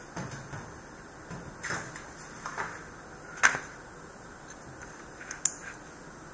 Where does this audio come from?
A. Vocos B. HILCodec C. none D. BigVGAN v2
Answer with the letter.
C